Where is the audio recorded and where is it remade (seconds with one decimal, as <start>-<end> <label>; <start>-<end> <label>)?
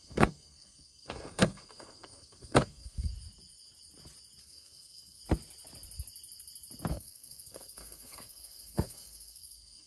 0.0-3.1 remade; 3.1-4.4 recorded; 4.4-5.2 remade; 5.2-6.9 recorded; 6.9-9.9 remade